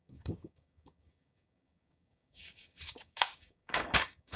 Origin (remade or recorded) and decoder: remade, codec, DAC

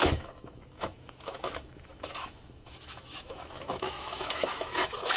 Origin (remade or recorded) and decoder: remade, autoencoder, DAC-VAE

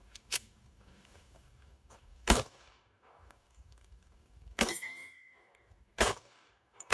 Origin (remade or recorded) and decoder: remade, codec, DAC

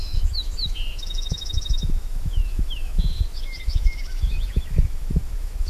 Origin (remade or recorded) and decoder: remade, autoencoder, DAC-VAE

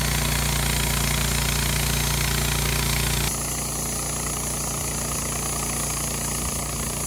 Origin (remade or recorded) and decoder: recorded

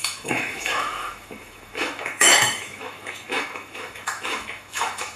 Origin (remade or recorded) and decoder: remade, autoencoder, DAC-VAE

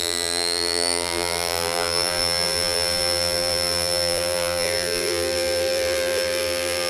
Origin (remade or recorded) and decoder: remade, vocoder, BigVGAN v2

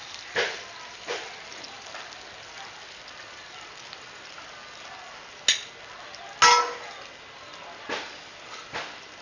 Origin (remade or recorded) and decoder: recorded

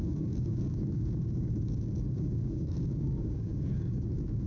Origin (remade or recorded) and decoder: remade, codec, DAC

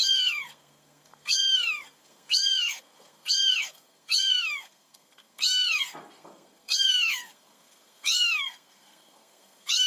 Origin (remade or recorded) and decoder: remade, codec, SNAC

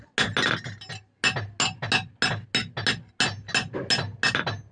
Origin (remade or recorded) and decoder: recorded